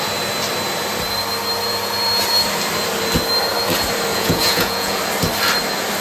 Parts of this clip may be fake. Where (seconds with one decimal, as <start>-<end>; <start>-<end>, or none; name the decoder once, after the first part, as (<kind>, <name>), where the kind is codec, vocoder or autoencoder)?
4.1-5.0 (vocoder, Vocos)